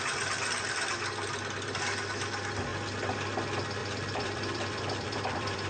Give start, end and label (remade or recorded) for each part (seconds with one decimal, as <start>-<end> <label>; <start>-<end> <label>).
0.0-3.8 recorded; 3.8-5.7 remade